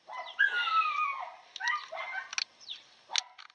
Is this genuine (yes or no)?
yes